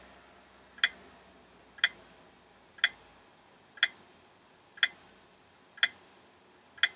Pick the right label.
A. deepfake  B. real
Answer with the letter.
B